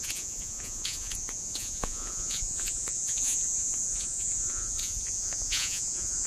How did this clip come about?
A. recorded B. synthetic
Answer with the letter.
B